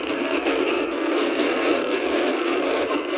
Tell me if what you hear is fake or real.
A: fake